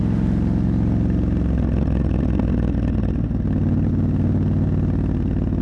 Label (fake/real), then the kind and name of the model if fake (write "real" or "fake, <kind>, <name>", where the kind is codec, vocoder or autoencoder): real